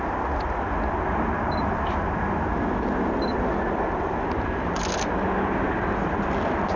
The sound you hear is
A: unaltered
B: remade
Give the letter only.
A